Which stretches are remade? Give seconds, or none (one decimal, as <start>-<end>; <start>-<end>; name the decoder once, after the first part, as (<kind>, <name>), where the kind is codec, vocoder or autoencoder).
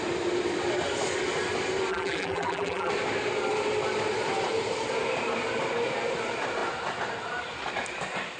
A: 1.9-2.9 (vocoder, BigVGAN v2)